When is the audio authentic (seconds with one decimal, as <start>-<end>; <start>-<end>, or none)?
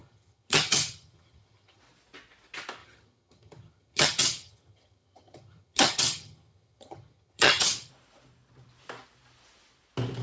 1.8-2.8; 7.9-10.2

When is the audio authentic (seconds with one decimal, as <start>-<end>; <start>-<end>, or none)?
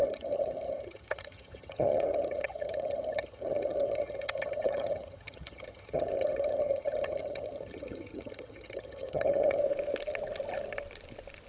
9.6-11.5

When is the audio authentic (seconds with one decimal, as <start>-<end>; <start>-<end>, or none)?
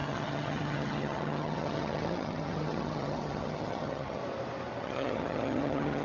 4.2-4.8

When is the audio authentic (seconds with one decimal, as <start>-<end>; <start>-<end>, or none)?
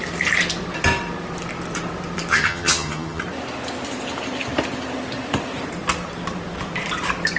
0.0-2.3; 3.2-7.4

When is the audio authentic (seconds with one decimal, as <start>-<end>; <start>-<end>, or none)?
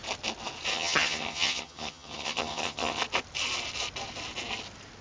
0.0-0.7; 3.0-5.0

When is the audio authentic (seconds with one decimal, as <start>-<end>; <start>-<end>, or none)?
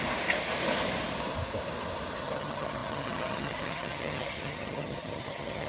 0.0-2.2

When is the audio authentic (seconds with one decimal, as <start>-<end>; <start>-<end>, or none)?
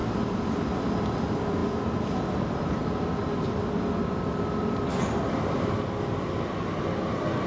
0.0-7.5